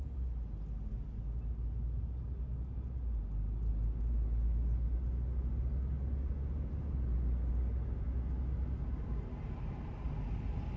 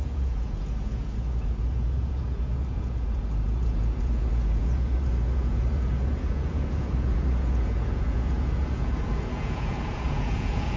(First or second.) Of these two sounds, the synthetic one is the second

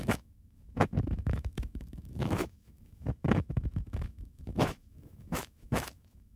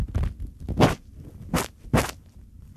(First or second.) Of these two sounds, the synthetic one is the first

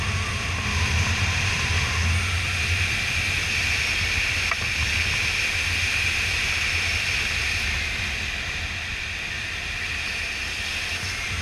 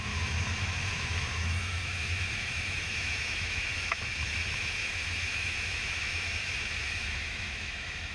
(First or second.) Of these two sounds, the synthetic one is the second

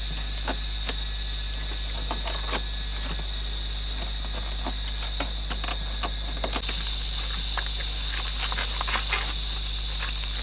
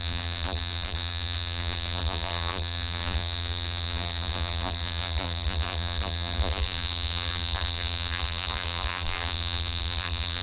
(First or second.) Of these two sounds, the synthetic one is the second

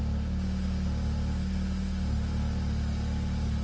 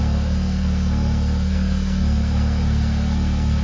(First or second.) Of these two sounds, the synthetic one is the second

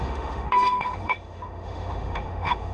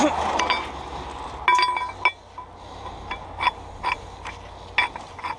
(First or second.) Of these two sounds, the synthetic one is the first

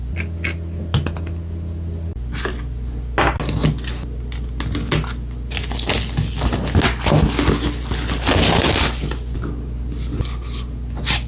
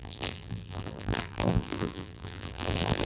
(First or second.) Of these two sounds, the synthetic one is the second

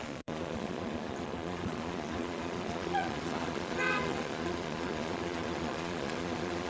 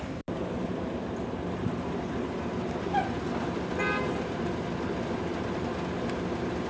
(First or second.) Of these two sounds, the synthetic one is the first